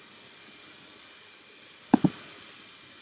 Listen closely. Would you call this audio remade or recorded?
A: recorded